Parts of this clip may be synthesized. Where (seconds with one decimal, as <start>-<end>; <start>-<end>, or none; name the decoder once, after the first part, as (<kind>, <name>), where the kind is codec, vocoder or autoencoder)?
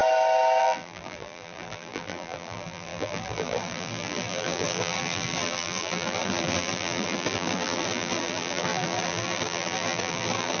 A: 0.6-10.6 (vocoder, BigVGAN v2)